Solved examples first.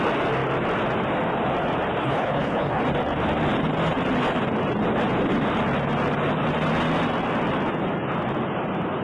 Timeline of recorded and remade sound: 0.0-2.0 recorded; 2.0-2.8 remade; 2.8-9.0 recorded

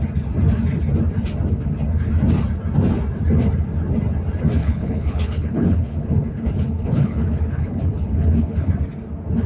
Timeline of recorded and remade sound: 0.0-4.6 recorded; 4.6-8.7 remade; 8.7-9.5 recorded

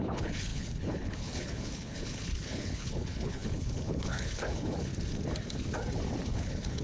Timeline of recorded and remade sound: 0.0-4.9 remade; 4.9-6.3 recorded; 6.3-6.8 remade

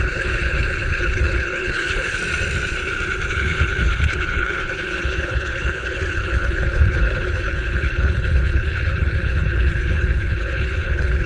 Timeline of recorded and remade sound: 0.0-2.2 remade; 2.2-3.3 recorded; 3.3-11.3 remade

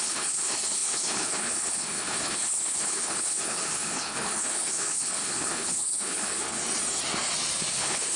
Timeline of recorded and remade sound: 0.0-6.6 remade; 6.6-7.7 recorded; 7.7-8.2 remade